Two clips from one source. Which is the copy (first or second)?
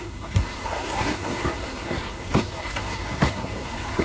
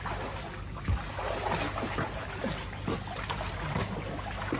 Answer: first